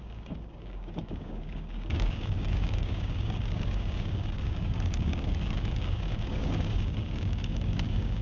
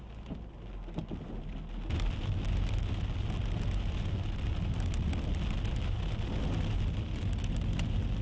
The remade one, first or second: first